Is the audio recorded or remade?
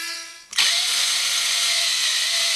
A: remade